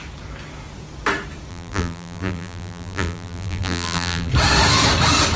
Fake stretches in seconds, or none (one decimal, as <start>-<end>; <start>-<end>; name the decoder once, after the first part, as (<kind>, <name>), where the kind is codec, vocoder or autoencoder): 1.5-4.3 (vocoder, BigVGAN v2)